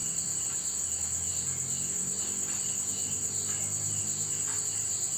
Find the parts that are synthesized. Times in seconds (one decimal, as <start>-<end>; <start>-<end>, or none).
2.0-2.6; 3.0-4.0